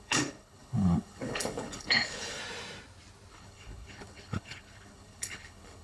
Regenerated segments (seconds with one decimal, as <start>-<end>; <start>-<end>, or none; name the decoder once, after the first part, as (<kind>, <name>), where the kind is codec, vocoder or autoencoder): 0.0-2.4 (codec, HILCodec); 3.3-5.8